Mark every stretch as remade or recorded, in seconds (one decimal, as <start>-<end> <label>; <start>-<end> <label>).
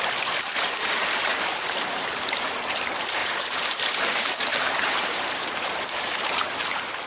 0.0-7.1 remade